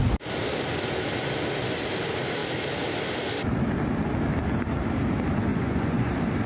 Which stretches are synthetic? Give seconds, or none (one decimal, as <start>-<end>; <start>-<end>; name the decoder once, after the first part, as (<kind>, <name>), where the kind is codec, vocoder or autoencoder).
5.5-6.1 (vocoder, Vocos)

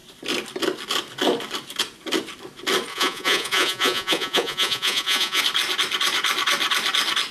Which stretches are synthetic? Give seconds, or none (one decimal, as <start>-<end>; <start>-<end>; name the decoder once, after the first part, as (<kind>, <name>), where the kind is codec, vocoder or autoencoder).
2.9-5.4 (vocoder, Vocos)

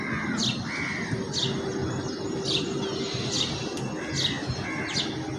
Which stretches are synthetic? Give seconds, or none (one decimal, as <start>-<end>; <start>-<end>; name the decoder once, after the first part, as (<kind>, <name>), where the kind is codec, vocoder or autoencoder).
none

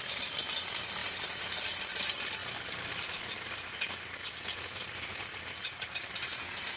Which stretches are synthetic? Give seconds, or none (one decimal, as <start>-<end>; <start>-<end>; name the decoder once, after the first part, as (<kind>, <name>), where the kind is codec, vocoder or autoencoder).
none

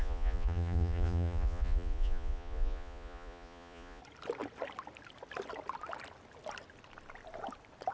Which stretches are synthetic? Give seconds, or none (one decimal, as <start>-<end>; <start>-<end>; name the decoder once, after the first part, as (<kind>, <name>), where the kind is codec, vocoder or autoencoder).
0.0-4.0 (vocoder, Vocos)

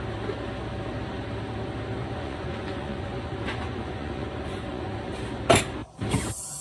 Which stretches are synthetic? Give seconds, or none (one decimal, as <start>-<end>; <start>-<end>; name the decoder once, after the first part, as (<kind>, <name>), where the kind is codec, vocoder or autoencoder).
2.0-5.1 (vocoder, Vocos)

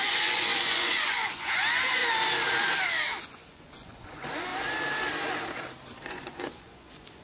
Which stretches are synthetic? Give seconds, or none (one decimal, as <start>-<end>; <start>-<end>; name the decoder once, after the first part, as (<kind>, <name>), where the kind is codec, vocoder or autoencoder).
0.0-2.0 (vocoder, Vocos); 3.2-4.5; 6.0-7.2